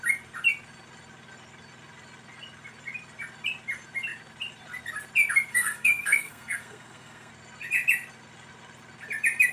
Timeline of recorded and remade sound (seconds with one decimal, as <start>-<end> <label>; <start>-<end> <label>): 0.0-5.5 recorded; 5.5-7.3 remade; 7.3-9.5 recorded